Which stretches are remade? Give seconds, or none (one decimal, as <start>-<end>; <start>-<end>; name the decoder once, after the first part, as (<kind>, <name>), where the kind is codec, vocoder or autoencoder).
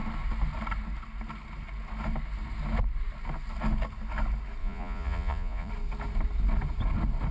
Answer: 4.6-5.7 (vocoder, Vocos)